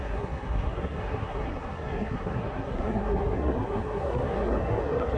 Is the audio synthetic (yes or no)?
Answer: yes